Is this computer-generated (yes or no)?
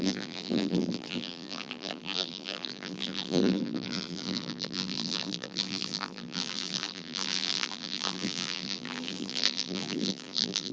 yes